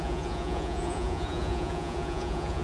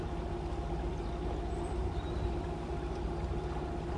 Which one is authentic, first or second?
second